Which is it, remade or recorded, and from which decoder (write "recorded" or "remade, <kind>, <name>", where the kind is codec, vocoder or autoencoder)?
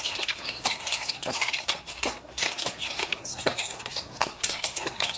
remade, codec, SNAC